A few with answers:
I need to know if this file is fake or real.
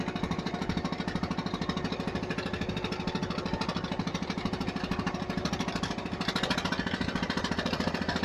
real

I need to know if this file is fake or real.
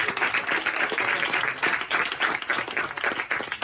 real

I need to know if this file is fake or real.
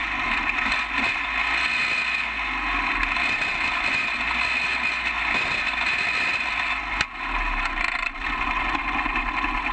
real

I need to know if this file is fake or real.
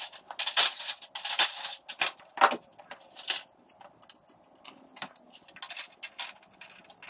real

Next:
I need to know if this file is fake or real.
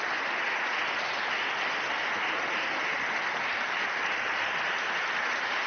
real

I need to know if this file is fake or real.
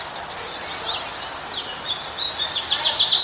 fake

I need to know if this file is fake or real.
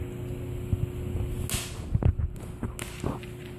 real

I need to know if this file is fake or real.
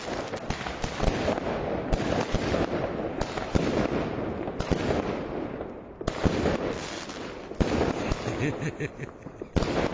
real